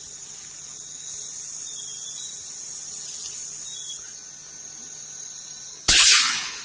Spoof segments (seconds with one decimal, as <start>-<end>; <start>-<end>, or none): 5.7-6.6